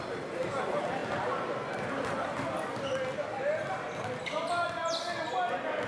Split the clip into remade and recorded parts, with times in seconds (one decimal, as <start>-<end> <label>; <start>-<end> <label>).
0.0-5.9 recorded